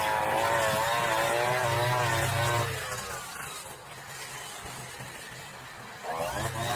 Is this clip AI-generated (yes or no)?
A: no